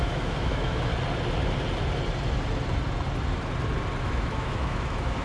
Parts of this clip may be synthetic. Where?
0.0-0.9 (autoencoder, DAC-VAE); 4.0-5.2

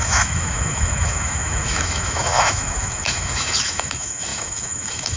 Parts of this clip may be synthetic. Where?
0.0-5.2 (autoencoder, DAC-VAE)

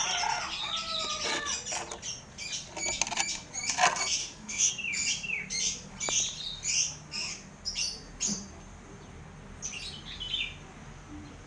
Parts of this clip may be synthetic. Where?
4.2-4.7 (autoencoder, DAC-VAE)

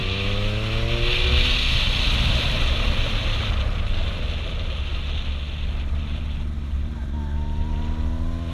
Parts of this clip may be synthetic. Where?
none

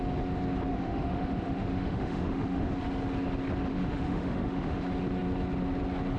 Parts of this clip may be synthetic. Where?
0.7-2.7 (autoencoder, DAC-VAE); 3.7-4.8